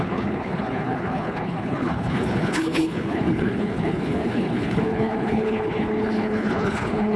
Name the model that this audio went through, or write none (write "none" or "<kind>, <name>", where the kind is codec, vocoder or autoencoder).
codec, HILCodec